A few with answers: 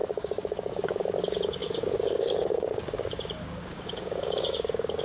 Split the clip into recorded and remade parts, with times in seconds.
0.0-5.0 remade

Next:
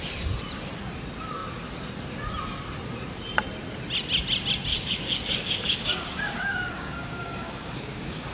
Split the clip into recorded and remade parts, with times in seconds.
0.0-4.7 recorded; 4.7-8.3 remade

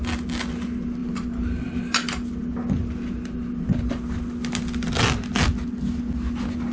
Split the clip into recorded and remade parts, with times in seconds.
0.0-6.7 recorded

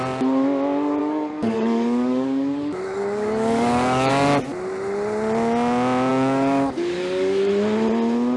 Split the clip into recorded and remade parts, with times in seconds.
0.0-1.0 recorded; 1.0-4.1 remade; 4.1-6.1 recorded; 6.1-7.5 remade; 7.5-8.4 recorded

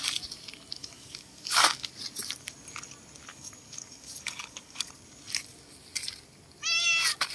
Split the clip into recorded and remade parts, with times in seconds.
0.0-0.8 recorded; 0.8-1.9 remade; 1.9-3.3 recorded; 3.3-4.9 remade; 4.9-7.3 recorded

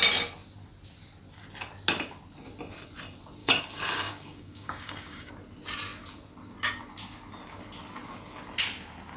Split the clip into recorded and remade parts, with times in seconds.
0.0-3.4 recorded; 3.4-5.3 remade; 5.3-9.2 recorded